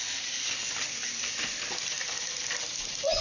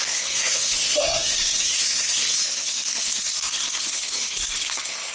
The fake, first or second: second